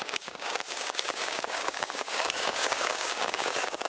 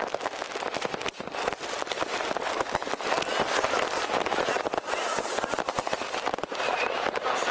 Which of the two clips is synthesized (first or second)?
first